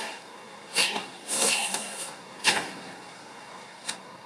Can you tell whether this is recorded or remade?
remade